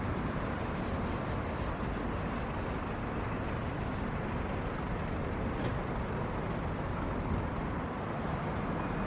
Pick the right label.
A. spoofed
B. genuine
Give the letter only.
B